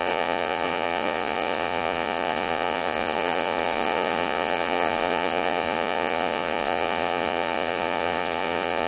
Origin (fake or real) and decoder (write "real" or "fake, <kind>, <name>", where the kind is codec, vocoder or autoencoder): fake, vocoder, Vocos